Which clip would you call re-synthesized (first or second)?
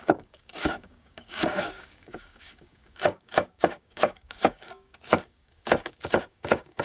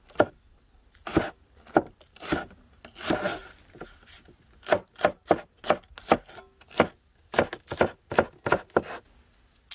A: first